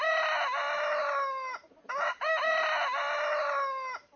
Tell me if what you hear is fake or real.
real